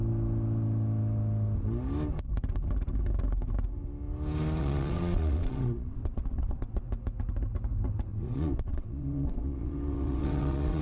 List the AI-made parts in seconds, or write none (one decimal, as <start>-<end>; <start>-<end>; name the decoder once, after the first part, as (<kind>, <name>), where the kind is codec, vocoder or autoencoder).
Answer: 4.6-6.8 (vocoder, WaveNeXt); 8.1-10.8